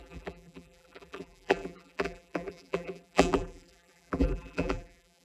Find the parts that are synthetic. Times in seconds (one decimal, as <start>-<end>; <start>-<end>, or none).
0.0-5.2